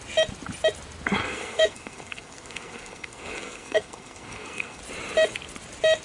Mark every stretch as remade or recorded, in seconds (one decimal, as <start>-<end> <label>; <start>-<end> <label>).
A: 0.0-1.2 recorded; 1.2-4.8 remade; 4.8-6.0 recorded